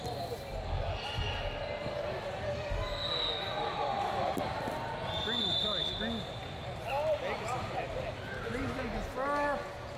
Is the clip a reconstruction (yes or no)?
no